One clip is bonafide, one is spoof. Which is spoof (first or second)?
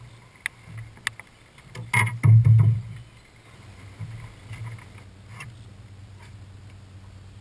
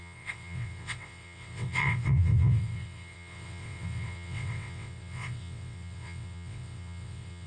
second